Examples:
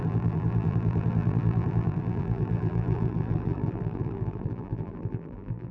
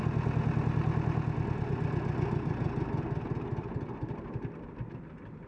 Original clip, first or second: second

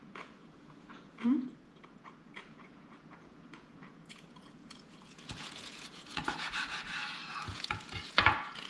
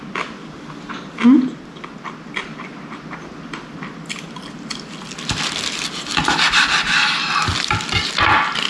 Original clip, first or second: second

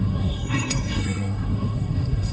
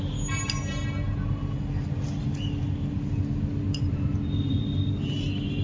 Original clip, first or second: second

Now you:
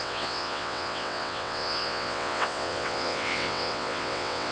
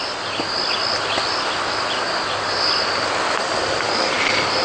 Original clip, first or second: second